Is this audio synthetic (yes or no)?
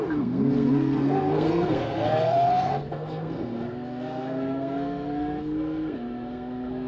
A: yes